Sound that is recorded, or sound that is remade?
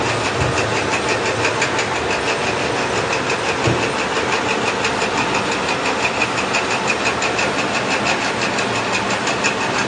recorded